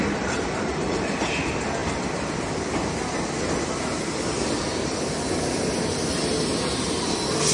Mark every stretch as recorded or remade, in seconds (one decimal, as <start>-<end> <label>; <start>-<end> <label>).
0.0-7.5 recorded